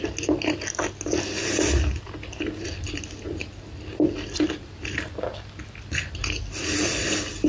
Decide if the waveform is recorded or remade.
recorded